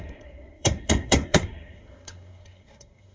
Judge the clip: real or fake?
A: fake